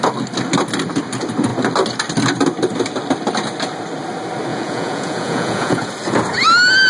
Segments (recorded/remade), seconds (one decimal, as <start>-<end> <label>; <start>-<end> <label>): 0.0-4.5 recorded; 4.5-5.9 remade; 5.9-6.9 recorded